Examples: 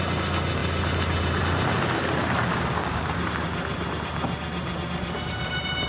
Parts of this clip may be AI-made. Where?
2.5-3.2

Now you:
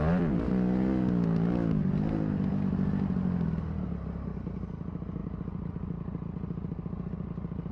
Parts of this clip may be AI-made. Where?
none

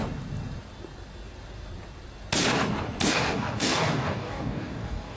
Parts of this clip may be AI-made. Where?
3.1-5.2

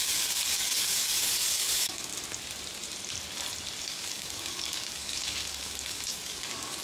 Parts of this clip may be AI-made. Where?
0.0-2.1; 3.8-6.8

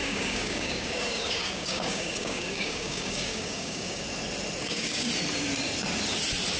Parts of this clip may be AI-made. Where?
0.0-4.0; 4.6-5.1

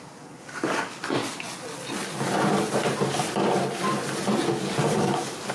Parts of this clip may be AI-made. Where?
0.0-1.2; 4.5-5.5

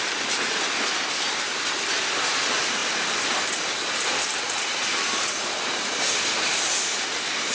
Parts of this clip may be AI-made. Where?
none

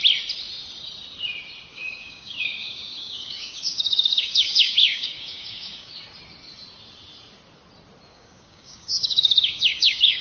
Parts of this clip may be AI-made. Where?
1.7-5.9; 8.1-10.2